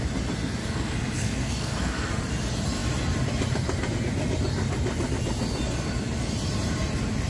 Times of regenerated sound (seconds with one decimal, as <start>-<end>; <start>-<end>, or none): 0.6-2.1